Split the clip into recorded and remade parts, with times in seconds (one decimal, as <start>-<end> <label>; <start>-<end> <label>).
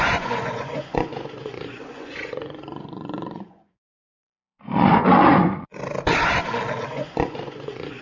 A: 0.0-5.7 remade; 5.7-6.9 recorded; 6.9-8.0 remade